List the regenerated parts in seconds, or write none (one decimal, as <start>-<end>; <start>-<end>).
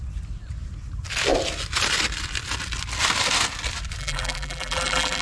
4.0-5.2